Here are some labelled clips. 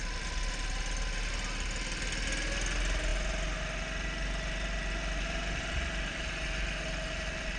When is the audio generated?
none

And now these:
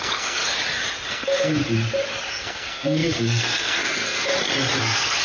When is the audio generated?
0.0-0.4; 1.1-1.6; 2.3-4.3; 4.8-5.2

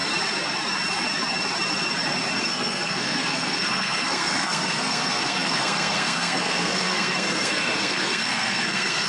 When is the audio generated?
2.4-9.1

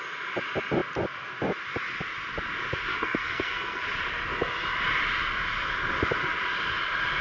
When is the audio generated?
2.9-3.8

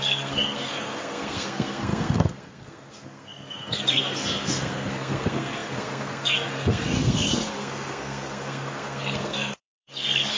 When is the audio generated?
0.0-10.4

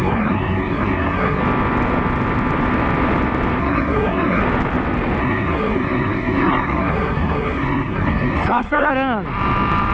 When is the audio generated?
0.0-1.4; 3.6-4.4; 5.2-8.9

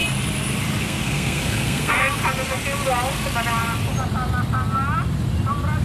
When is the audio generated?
0.8-2.2

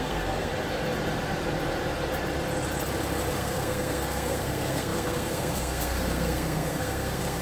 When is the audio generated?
0.0-0.5; 3.3-7.4